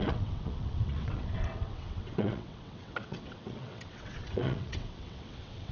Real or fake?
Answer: fake